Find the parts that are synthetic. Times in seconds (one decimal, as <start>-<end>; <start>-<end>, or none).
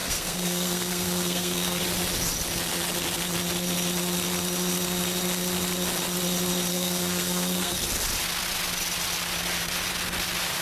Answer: 0.0-1.8; 6.7-7.8